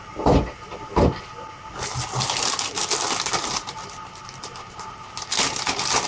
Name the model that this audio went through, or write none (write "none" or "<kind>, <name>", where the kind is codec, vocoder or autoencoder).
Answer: none